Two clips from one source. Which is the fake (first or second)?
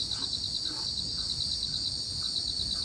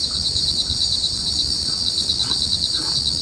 second